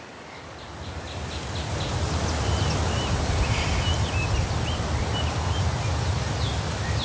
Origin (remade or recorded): recorded